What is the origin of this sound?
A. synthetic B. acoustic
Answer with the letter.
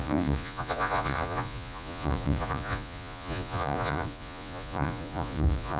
A